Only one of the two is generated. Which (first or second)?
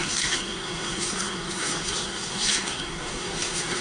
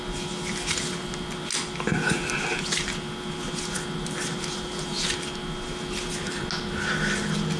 first